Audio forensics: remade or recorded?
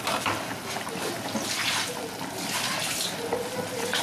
recorded